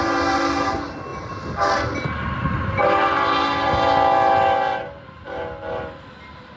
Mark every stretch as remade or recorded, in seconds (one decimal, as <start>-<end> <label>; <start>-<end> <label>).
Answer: 0.0-6.6 recorded